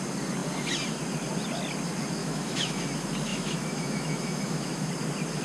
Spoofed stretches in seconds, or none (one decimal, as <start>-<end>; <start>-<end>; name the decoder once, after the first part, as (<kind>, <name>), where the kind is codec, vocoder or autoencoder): 2.2-2.8 (autoencoder, DAC-VAE); 3.3-4.9